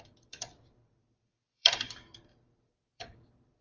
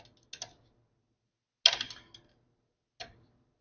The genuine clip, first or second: second